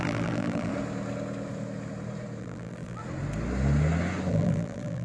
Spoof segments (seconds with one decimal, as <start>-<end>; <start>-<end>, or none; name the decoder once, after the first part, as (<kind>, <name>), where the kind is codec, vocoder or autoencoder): 0.0-0.7 (vocoder, BigVGAN v2); 2.4-3.0; 4.3-5.0